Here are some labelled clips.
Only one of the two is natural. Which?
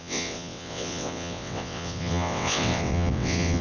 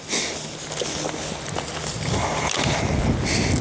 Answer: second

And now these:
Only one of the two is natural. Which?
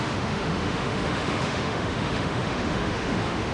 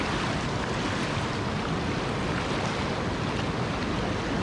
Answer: second